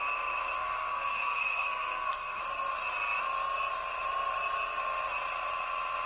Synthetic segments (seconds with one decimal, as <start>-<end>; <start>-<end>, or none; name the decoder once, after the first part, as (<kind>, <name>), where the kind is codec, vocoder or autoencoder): 0.6-2.4 (codec, SNAC)